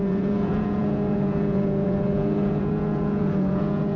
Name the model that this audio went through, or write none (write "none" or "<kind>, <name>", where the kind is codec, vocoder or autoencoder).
vocoder, Vocos